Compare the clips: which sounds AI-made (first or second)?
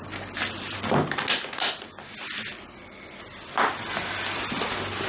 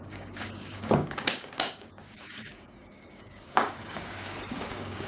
second